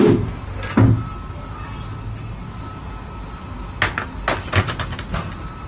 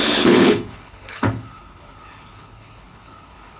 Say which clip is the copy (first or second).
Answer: second